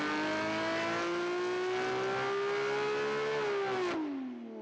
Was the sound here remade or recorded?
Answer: recorded